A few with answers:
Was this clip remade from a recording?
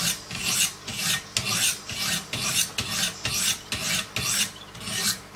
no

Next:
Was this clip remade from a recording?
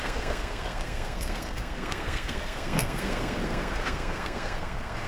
yes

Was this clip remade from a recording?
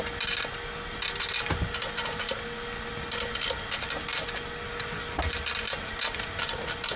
no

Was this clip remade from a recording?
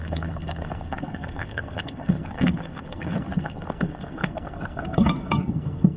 yes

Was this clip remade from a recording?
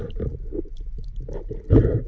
yes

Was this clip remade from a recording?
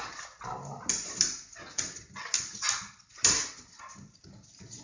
no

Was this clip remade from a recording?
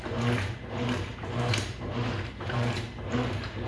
yes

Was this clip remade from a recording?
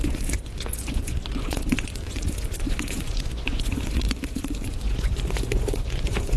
yes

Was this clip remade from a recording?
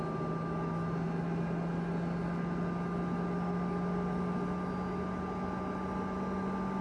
no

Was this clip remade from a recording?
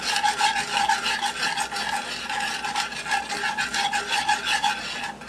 no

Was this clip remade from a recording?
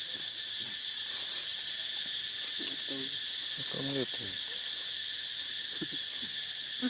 no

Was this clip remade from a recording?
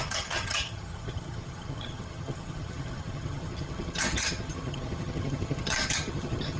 yes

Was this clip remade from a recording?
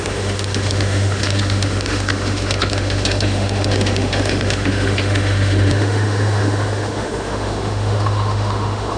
yes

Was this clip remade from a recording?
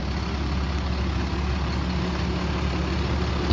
no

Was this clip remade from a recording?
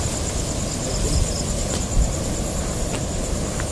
no